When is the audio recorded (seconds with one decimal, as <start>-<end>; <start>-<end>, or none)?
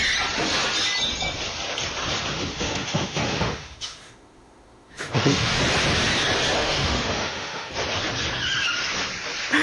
0.0-2.3; 5.6-6.6; 7.7-9.6